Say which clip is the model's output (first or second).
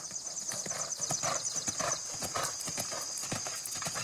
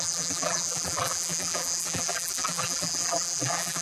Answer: second